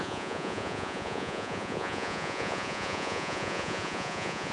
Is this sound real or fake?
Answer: fake